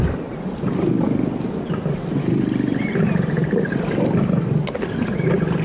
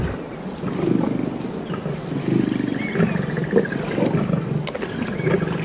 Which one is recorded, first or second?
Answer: second